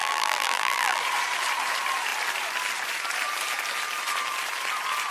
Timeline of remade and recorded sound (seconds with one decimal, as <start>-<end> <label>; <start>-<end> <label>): 0.0-1.0 remade; 1.0-5.1 recorded